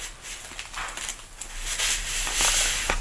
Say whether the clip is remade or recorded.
recorded